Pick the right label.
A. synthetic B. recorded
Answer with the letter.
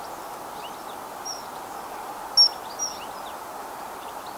B